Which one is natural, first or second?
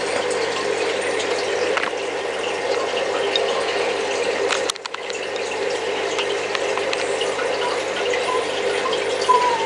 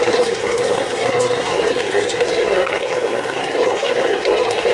first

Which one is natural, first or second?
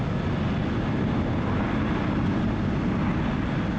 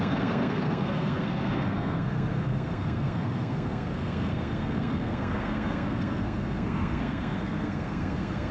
first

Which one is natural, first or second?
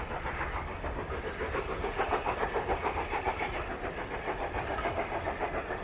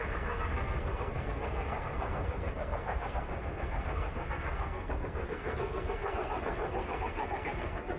first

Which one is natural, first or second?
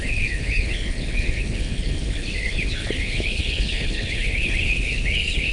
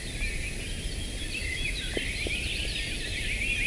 second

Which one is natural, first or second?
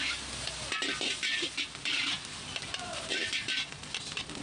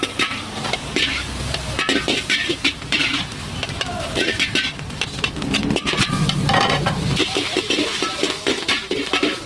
first